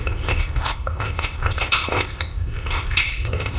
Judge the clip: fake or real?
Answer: fake